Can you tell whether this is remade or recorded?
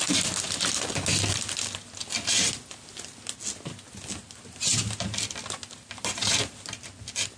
recorded